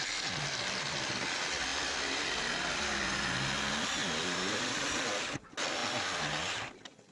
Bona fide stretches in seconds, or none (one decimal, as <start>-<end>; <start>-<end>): 0.0-1.7; 3.2-4.0; 4.9-7.1